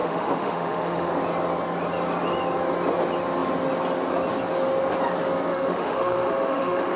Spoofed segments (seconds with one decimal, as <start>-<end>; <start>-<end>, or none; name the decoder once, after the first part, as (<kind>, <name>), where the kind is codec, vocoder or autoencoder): 0.0-1.1 (autoencoder, DAC-VAE); 5.5-7.0